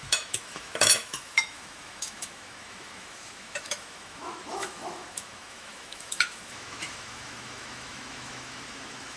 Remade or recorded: remade